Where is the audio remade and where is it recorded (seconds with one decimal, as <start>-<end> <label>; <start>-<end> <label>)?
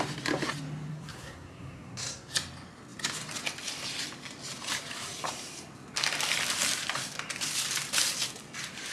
0.0-0.9 recorded; 0.9-2.3 remade; 2.3-8.9 recorded